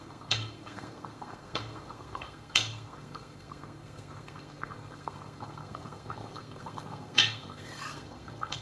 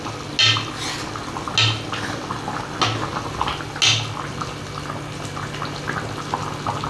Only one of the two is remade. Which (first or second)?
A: first